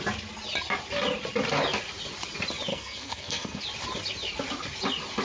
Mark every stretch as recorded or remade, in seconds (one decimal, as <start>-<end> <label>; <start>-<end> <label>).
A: 0.0-2.7 recorded; 2.7-3.6 remade; 3.6-5.2 recorded